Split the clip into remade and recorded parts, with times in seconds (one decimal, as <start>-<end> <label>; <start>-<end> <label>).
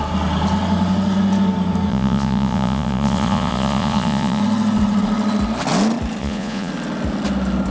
0.0-1.9 recorded; 1.9-4.4 remade; 4.4-6.2 recorded; 6.2-6.7 remade; 6.7-7.7 recorded